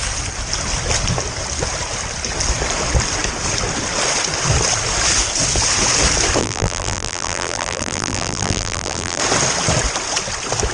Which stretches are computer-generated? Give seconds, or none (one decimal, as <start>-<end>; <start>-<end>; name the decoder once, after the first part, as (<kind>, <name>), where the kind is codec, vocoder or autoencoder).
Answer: 6.4-9.2 (vocoder, BigVGAN v2)